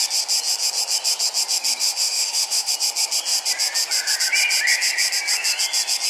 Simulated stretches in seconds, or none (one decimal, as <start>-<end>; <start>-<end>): 1.8-2.7